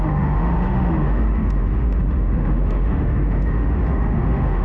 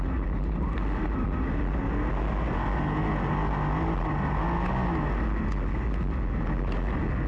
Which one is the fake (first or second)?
first